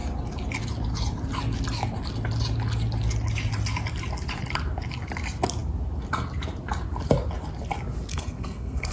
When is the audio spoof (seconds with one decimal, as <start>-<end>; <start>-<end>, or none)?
8.1-8.9

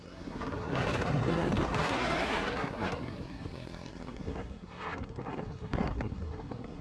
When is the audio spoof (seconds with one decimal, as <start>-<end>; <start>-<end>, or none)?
0.0-6.8

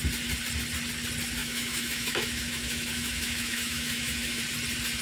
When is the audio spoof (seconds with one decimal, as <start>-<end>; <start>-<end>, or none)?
1.4-4.4

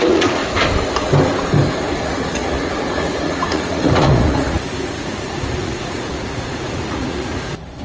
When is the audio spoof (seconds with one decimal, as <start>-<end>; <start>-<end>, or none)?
0.0-0.4; 1.7-7.8

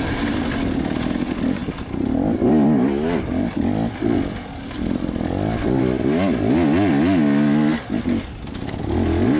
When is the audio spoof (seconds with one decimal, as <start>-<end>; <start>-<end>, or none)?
none

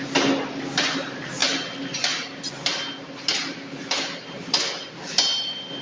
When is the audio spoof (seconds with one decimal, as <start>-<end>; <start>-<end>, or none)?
none

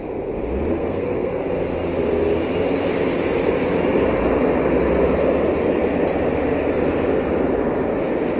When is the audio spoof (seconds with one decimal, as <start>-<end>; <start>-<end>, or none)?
0.8-1.4

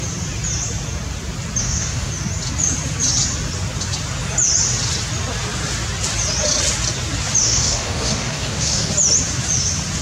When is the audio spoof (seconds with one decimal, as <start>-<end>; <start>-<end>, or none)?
1.6-2.1; 7.4-8.9